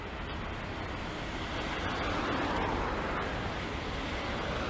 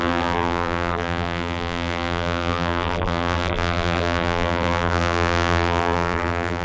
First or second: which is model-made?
second